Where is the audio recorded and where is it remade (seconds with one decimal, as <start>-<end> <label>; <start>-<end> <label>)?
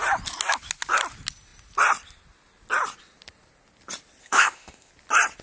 0.0-4.2 recorded; 4.2-4.9 remade; 4.9-5.4 recorded